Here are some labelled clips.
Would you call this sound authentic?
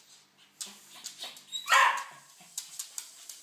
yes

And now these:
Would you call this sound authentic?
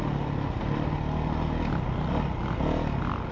yes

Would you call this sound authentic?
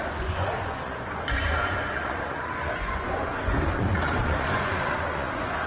no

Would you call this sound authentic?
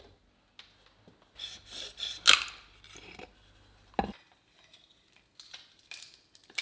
yes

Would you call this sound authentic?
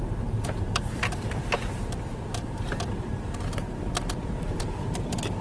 no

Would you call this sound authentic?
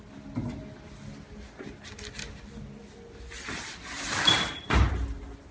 yes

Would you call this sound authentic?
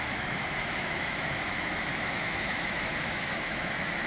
no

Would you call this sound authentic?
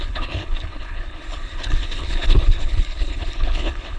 no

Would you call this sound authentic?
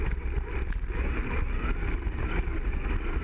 yes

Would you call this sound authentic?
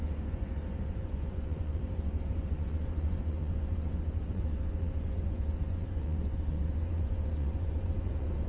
no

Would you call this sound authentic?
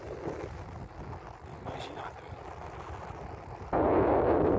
yes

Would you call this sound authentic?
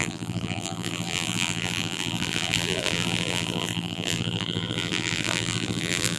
no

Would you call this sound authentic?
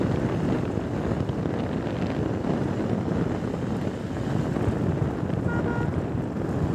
yes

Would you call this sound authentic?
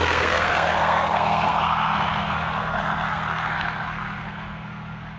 no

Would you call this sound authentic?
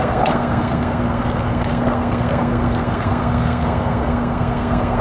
no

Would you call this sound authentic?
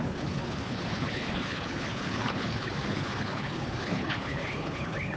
no